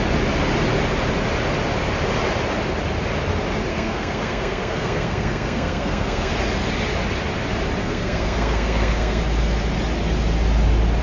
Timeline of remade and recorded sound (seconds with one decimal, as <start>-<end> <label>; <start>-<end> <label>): 0.0-3.7 recorded; 3.7-6.3 remade; 6.3-7.8 recorded; 7.8-9.2 remade; 9.2-11.0 recorded